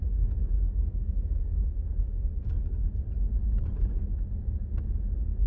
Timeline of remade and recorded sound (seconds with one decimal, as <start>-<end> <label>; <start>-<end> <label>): 0.0-2.8 remade; 2.8-5.5 recorded